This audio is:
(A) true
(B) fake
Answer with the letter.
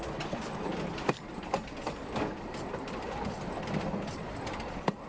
A